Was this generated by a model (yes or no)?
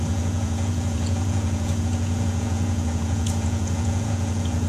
yes